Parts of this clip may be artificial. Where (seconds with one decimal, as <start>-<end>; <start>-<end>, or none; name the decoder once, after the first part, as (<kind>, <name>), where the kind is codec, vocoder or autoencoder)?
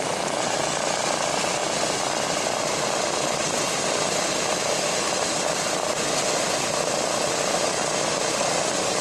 none